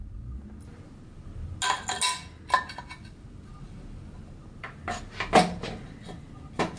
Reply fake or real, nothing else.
real